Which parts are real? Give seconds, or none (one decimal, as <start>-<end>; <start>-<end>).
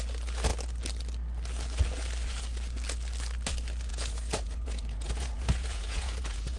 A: 0.0-3.9